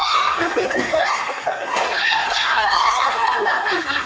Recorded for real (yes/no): no